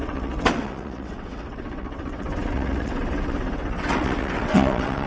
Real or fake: fake